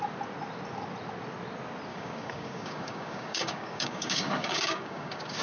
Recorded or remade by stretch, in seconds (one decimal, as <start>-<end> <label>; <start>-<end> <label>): 0.0-1.9 recorded; 1.9-5.4 remade